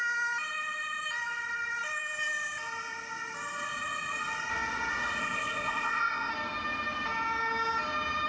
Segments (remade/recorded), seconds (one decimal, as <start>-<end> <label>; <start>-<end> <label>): 0.0-5.2 recorded; 5.2-6.3 remade; 6.3-8.3 recorded